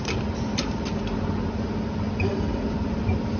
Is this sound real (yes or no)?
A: yes